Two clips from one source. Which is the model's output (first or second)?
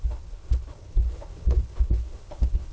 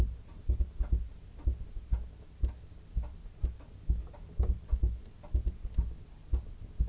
first